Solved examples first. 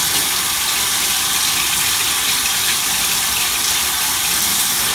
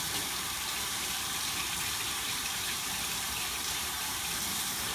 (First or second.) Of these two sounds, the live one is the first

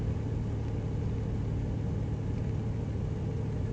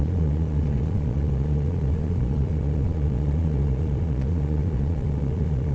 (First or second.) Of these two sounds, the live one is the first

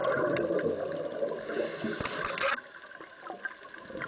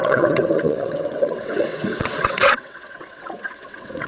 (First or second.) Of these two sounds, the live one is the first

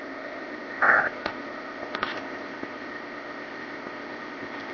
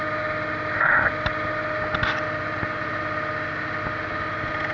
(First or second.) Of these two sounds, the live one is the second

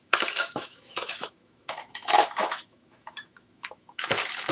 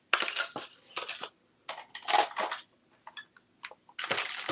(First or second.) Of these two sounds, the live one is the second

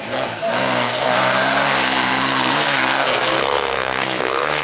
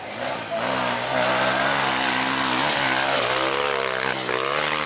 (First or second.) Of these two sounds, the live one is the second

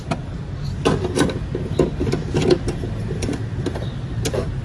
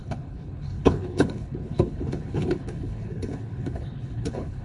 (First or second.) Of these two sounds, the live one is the first